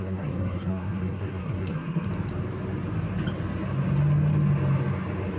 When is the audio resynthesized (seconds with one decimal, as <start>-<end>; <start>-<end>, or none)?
0.0-2.1